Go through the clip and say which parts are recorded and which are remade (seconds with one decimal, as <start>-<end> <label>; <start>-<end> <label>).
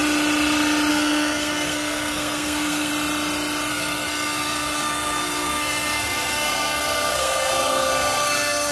0.0-0.9 recorded; 0.9-2.9 remade; 2.9-3.7 recorded; 3.7-8.7 remade